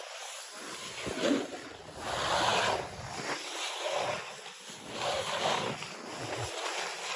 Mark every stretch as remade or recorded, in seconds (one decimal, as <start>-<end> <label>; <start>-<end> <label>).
0.0-7.2 recorded